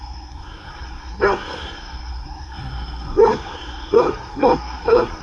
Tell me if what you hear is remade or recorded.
remade